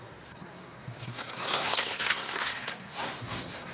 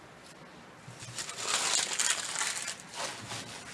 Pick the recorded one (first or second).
second